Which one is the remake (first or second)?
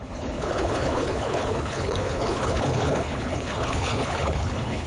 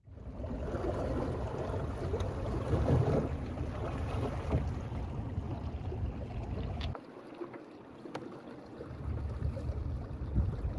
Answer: first